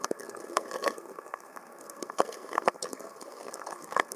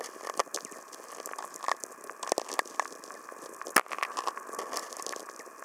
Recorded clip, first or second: second